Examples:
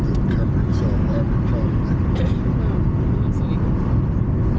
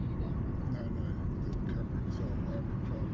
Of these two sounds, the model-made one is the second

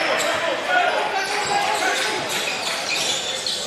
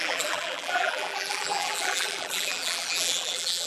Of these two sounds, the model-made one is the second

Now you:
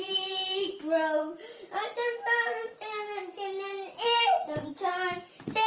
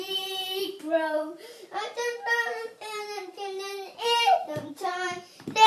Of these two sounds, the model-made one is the second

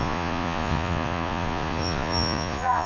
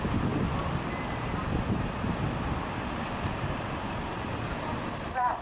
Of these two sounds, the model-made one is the first